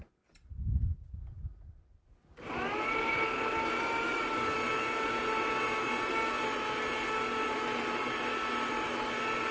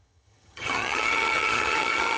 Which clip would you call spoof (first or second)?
second